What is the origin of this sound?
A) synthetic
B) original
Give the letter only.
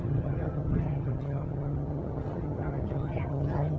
A